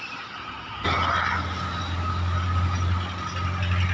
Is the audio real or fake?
real